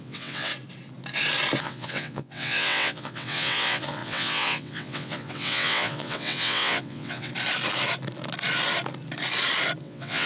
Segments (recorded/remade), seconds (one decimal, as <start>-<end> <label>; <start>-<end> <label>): 0.0-0.5 remade; 0.5-1.6 recorded; 1.6-7.3 remade; 7.3-9.8 recorded; 9.8-10.3 remade